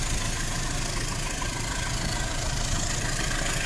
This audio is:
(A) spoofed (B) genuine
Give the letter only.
B